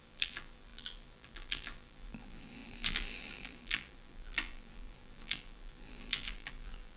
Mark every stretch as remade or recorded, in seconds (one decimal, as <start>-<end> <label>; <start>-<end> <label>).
0.0-7.0 remade